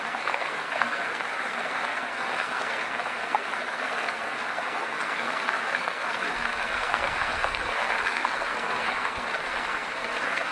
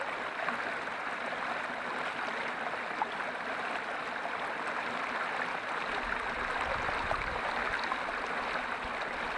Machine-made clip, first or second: first